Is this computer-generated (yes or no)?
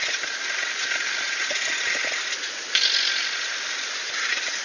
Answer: no